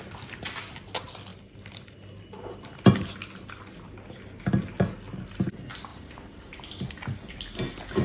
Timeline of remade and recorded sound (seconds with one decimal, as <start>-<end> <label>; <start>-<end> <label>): 0.0-5.9 recorded; 5.9-6.8 remade; 6.8-8.0 recorded